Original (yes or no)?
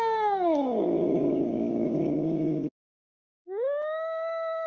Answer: no